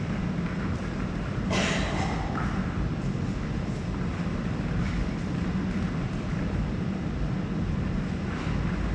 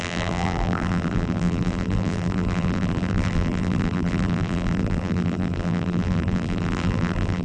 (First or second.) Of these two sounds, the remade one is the second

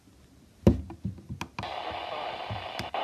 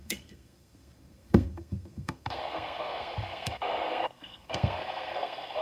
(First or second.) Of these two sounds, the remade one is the second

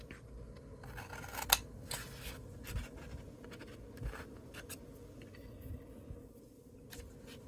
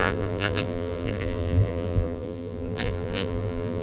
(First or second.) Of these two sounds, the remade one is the second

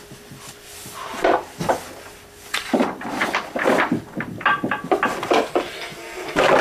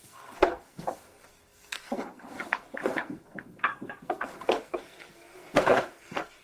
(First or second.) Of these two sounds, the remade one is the second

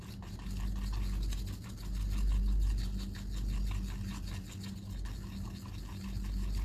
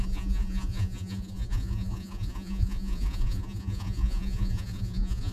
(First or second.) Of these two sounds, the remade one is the second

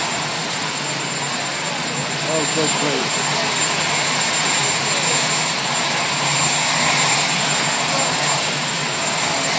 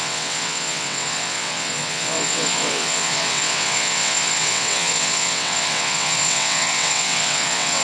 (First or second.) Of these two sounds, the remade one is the second